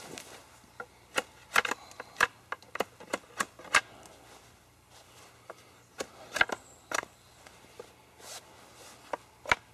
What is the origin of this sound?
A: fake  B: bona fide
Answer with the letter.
B